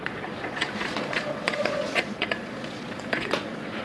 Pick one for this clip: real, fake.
fake